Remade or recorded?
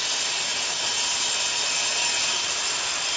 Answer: recorded